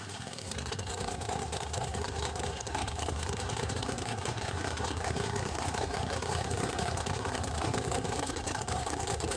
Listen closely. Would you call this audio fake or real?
fake